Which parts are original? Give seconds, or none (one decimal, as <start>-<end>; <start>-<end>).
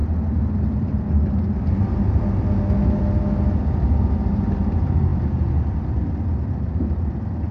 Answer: 0.0-7.5